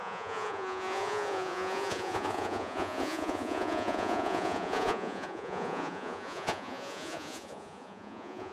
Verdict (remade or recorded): remade